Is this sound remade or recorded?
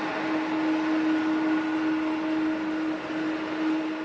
recorded